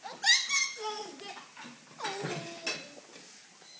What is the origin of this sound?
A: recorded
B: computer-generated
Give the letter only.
A